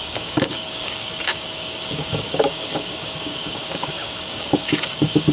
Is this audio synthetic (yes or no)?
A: yes